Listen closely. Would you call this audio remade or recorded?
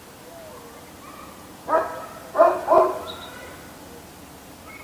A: recorded